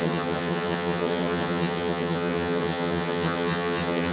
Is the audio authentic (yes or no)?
no